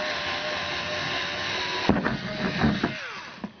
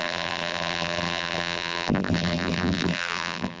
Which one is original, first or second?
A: first